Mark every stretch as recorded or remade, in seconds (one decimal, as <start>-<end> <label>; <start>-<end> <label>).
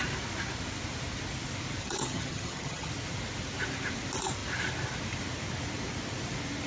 0.0-1.8 recorded; 1.8-2.9 remade; 2.9-6.7 recorded